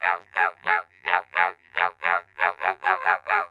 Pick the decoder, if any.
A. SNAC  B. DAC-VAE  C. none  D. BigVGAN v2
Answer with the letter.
D